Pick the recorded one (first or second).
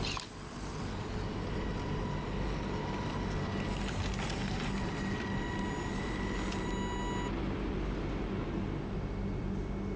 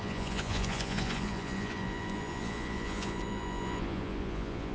first